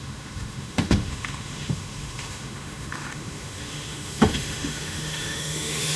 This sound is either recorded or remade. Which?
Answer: remade